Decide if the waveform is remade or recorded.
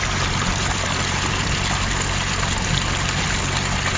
recorded